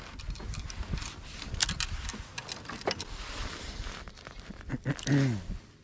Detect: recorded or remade recorded